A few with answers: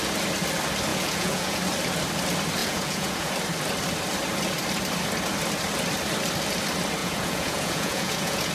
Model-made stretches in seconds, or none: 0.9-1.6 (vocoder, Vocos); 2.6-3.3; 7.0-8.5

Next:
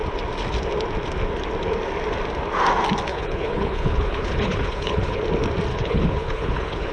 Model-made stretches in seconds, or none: 3.1-5.2 (codec, HILCodec); 5.7-6.9

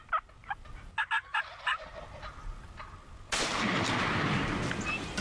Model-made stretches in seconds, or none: none

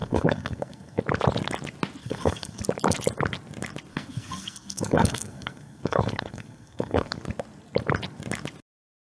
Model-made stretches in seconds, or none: 0.0-1.0 (codec, SNAC); 2.0-2.6; 3.9-7.2